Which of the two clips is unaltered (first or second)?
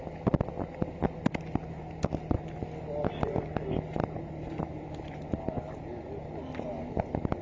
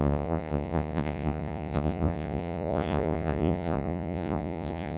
first